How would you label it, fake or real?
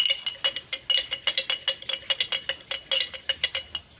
real